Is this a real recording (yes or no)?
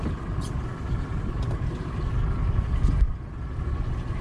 yes